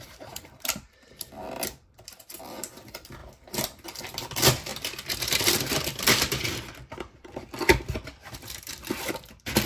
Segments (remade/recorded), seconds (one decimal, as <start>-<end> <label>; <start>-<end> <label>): 0.0-3.2 remade; 3.2-4.0 recorded; 4.0-9.7 remade